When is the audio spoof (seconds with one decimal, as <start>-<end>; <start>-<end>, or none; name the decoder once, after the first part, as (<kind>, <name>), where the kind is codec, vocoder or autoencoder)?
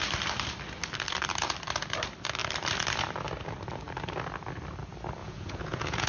5.2-6.1 (vocoder, Vocos)